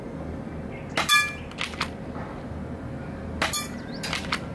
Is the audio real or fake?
real